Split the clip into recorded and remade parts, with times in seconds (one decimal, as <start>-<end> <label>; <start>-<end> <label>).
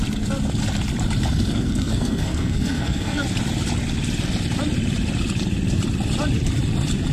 0.0-1.5 recorded; 1.5-3.2 remade; 3.2-7.1 recorded